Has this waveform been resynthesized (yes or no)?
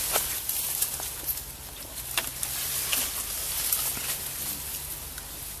no